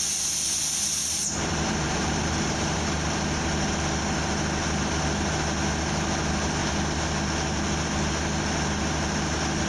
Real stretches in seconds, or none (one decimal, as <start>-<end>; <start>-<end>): 0.0-1.0; 2.8-9.7